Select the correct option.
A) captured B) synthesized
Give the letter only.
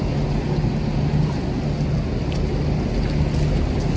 A